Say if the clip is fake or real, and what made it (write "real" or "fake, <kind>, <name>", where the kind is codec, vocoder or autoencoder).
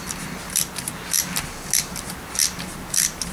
real